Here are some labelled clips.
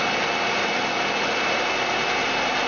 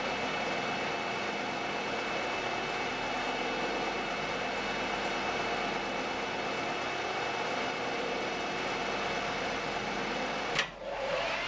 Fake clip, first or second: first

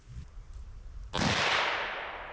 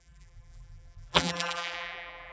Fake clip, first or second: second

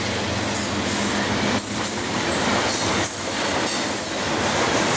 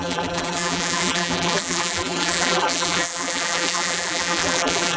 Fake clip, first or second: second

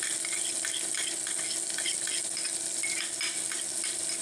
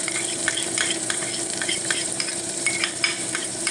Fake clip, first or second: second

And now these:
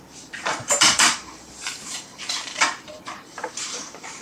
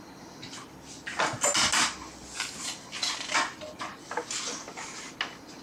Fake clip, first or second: first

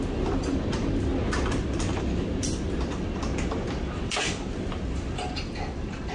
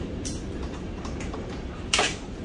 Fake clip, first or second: second